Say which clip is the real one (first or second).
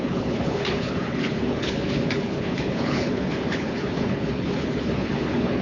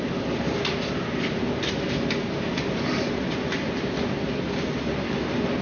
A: second